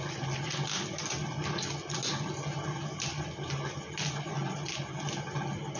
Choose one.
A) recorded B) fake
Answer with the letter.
A